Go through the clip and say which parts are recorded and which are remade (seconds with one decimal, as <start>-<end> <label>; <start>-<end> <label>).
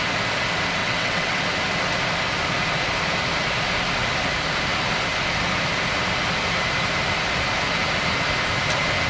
0.0-0.8 recorded; 0.8-1.4 remade; 1.4-9.1 recorded